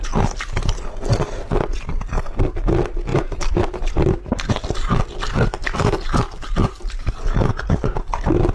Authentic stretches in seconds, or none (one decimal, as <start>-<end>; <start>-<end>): 0.0-3.1; 4.5-6.6; 7.1-8.5